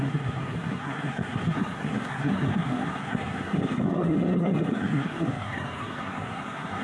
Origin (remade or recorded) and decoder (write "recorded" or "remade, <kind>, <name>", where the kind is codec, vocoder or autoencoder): remade, codec, SNAC